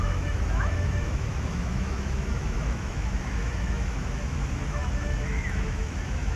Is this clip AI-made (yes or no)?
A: yes